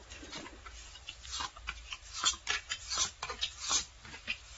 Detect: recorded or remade recorded